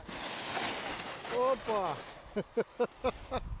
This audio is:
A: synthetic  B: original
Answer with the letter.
B